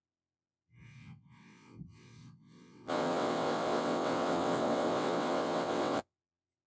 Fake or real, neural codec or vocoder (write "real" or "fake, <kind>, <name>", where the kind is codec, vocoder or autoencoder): fake, vocoder, WaveNeXt